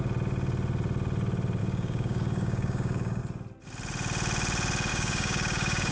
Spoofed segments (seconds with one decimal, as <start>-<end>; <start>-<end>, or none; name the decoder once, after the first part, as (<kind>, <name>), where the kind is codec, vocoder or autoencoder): 1.6-3.2 (codec, DAC); 4.9-5.9